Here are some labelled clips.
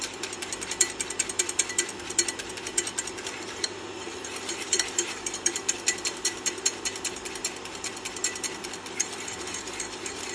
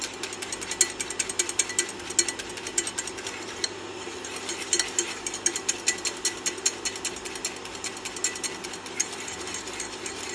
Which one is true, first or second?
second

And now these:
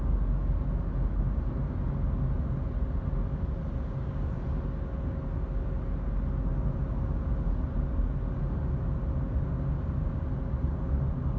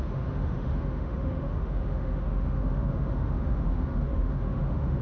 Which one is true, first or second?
first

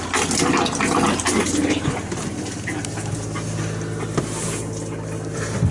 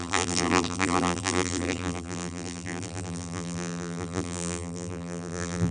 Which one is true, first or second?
first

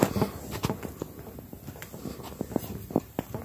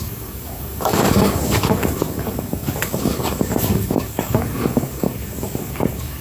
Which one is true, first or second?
first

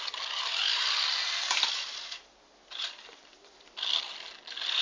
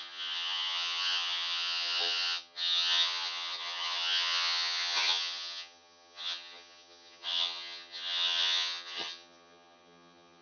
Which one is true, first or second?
first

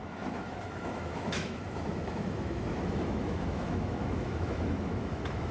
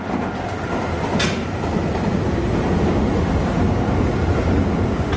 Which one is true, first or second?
second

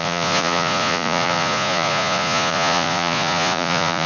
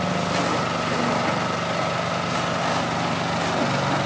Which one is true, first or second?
second